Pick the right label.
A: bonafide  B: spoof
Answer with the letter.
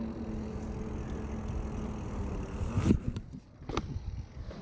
A